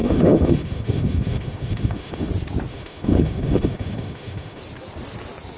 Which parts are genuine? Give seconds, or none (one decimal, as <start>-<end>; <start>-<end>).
2.3-2.7; 4.6-5.6

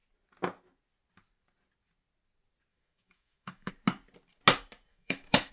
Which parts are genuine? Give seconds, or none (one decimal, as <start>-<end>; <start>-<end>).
0.0-2.7; 3.7-4.9